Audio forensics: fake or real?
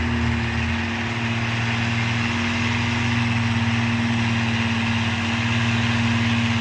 real